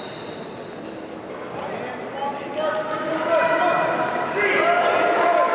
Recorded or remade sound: recorded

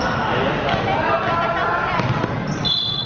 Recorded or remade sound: recorded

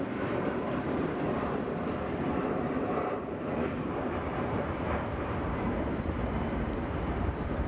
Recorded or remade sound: remade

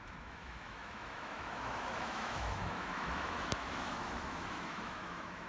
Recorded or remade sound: remade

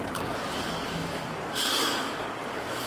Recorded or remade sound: remade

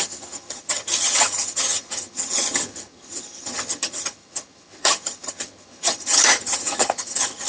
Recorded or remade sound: remade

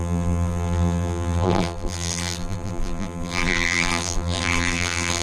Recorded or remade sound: remade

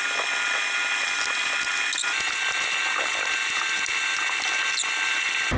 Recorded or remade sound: recorded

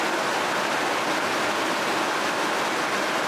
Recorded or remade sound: recorded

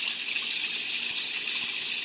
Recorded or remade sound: recorded